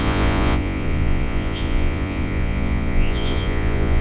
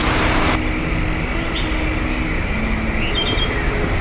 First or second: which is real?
second